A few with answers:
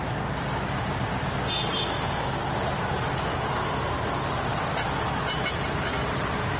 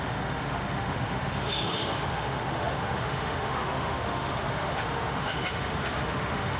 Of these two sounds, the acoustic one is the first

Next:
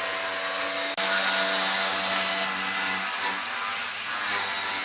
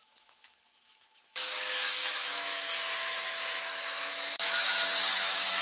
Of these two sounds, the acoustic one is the first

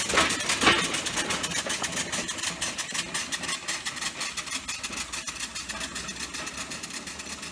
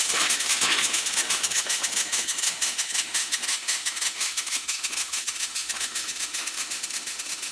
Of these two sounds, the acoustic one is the first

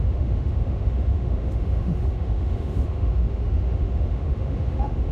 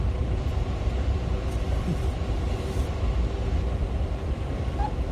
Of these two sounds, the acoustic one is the second